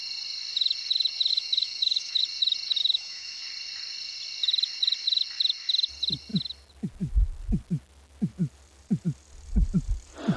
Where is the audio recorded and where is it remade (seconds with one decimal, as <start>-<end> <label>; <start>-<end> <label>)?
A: 0.0-1.3 recorded; 1.3-2.2 remade; 2.2-2.8 recorded; 2.8-3.4 remade; 3.4-10.4 recorded